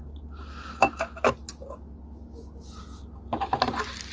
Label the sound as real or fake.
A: real